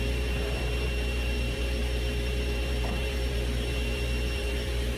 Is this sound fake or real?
fake